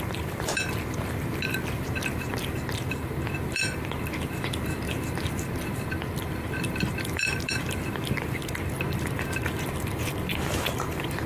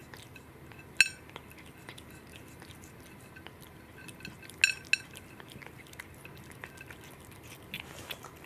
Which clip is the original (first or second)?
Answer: second